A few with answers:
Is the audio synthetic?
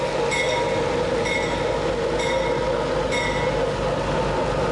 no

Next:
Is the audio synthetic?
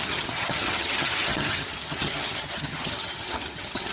yes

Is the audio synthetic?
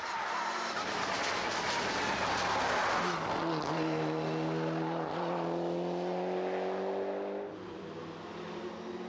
no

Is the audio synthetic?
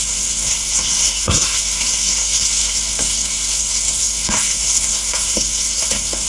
yes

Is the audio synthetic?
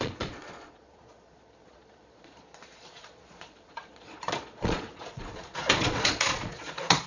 yes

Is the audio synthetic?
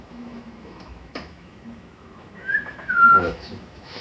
yes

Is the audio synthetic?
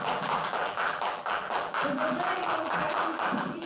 yes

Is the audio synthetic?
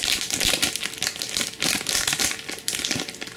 yes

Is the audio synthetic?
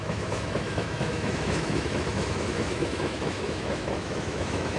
yes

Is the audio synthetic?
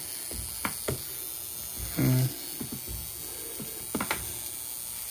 no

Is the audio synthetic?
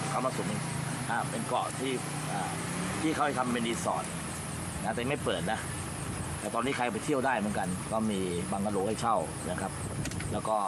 yes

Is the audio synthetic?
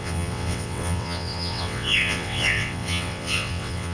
yes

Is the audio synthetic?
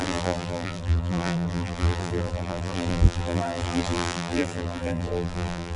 yes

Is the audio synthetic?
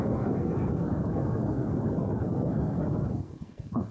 yes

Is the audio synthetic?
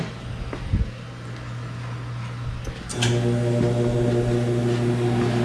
no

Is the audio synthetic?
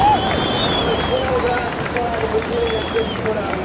yes